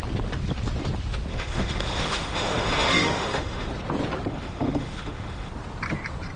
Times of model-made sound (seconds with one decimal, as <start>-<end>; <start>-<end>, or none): 1.3-3.7; 4.3-5.5